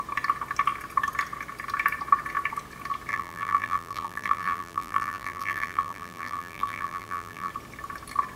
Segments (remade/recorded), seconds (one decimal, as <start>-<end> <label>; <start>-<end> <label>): 0.0-3.1 recorded; 3.1-7.5 remade; 7.5-8.4 recorded